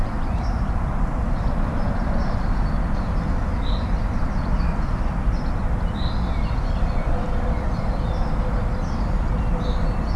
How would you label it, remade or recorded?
recorded